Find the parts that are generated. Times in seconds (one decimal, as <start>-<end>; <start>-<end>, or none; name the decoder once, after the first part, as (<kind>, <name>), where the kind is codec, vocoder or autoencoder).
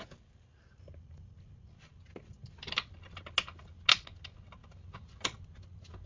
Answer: 4.6-6.1 (vocoder, BigVGAN v2)